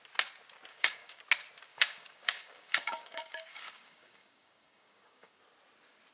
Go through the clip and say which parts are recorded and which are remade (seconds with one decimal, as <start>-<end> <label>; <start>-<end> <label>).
0.0-0.7 recorded; 0.7-1.2 remade; 1.2-1.7 recorded; 1.7-5.4 remade; 5.4-6.1 recorded